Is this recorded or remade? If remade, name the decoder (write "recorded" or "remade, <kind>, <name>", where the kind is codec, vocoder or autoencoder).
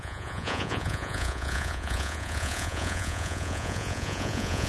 remade, vocoder, Vocos